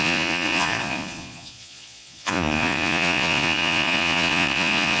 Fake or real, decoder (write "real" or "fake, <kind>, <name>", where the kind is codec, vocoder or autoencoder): fake, vocoder, Vocos